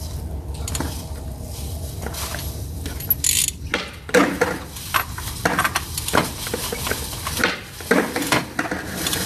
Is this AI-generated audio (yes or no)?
no